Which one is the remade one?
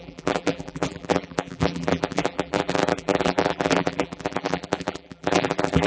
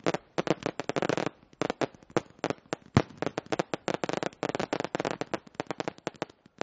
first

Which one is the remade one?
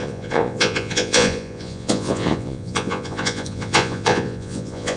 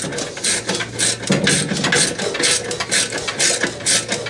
first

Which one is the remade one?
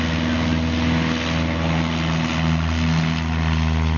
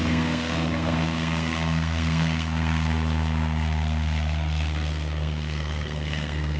second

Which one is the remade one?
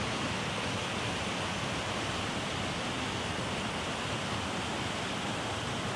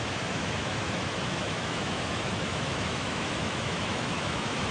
second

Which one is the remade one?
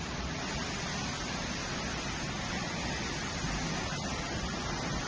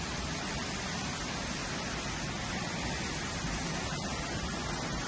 second